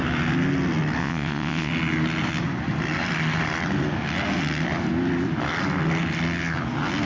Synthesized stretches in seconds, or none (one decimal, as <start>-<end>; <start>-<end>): 1.0-1.7